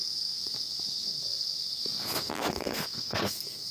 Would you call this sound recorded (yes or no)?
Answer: no